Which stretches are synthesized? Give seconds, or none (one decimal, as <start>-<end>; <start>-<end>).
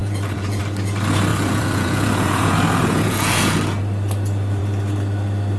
0.0-0.6; 1.3-3.8